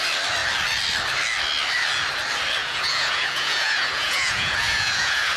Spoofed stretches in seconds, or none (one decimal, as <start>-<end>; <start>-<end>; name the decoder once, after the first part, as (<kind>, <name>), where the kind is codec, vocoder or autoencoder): 2.6-5.4 (vocoder, Vocos)